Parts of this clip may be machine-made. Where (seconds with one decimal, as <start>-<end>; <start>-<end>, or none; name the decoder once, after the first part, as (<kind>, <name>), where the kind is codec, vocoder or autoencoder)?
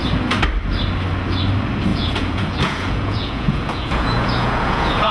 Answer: 1.9-5.1 (vocoder, Vocos)